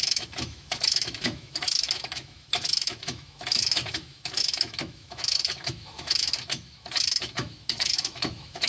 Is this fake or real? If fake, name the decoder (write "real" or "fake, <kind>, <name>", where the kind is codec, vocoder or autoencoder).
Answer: fake, autoencoder, DAC-VAE